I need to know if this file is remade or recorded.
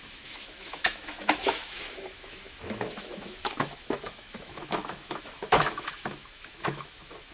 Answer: remade